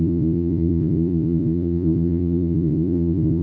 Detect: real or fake fake